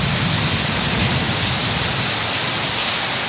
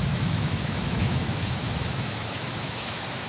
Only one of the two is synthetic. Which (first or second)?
second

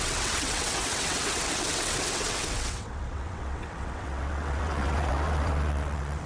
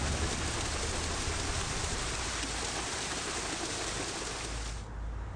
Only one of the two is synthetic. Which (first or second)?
first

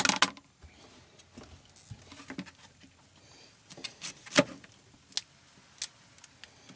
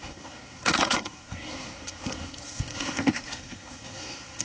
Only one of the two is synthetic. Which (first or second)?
second